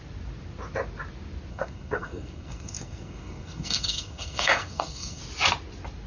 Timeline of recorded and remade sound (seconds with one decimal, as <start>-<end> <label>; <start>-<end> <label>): 0.0-1.5 recorded; 1.5-5.2 remade; 5.2-6.1 recorded